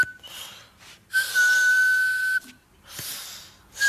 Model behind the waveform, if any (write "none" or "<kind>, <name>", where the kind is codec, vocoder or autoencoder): none